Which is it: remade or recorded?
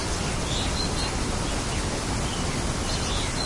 recorded